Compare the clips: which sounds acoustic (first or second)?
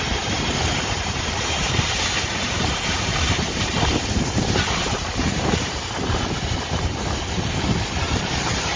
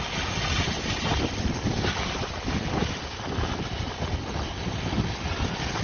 second